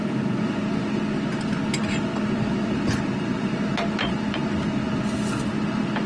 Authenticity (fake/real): real